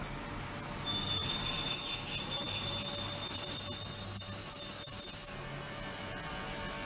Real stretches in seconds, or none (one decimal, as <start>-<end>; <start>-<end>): 0.0-6.9